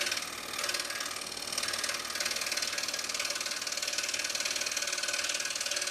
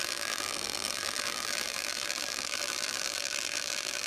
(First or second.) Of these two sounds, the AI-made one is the second